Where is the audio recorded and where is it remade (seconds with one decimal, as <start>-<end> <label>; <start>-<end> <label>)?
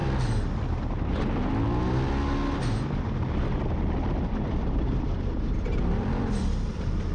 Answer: 0.0-3.6 recorded; 3.6-7.1 remade